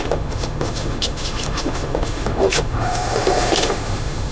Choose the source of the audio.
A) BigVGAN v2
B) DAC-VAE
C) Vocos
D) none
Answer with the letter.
B